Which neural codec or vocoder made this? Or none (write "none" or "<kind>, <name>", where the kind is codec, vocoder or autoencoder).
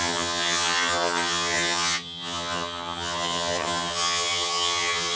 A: vocoder, HiFi-GAN